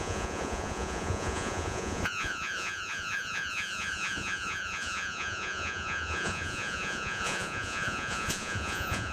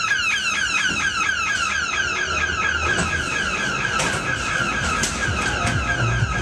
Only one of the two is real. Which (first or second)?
second